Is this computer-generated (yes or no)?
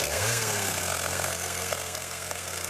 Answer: yes